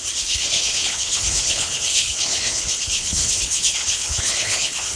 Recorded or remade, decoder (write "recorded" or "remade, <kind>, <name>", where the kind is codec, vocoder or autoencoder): remade, codec, HILCodec